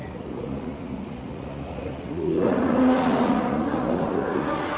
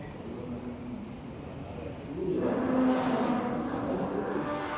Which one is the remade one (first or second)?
first